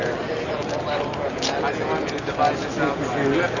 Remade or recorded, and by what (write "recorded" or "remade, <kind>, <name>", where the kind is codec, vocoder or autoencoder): recorded